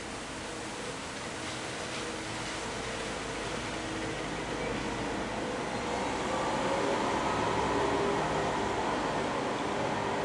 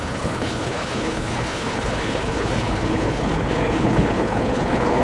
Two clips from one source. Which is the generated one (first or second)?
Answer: second